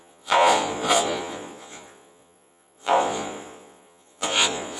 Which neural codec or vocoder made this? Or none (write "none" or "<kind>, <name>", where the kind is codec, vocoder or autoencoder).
vocoder, Vocos